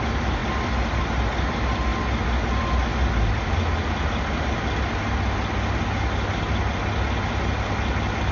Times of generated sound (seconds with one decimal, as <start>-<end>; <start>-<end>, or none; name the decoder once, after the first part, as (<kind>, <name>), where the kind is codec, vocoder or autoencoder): none